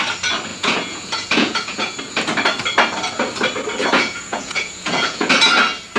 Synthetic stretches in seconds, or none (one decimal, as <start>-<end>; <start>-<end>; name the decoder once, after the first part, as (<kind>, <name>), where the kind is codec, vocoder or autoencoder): 0.5-2.0 (vocoder, Vocos); 3.8-5.3

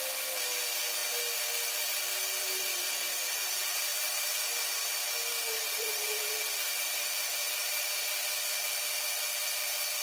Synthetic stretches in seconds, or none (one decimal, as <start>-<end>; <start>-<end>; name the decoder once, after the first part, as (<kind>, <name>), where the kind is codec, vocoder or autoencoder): 3.9-4.7 (vocoder, BigVGAN v2); 5.3-7.8

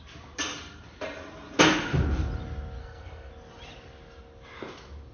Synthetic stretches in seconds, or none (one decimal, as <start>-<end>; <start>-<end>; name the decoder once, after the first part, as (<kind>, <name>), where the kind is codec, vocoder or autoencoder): 2.8-3.3 (codec, SNAC)

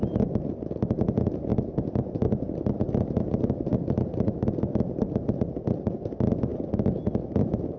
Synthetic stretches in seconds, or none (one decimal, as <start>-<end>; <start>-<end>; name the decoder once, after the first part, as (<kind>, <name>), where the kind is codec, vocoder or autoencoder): none